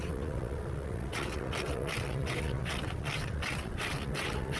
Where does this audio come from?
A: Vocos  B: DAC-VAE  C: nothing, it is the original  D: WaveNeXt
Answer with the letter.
D